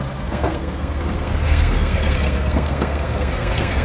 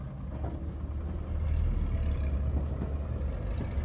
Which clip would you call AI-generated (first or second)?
first